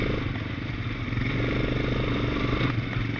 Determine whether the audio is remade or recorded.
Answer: recorded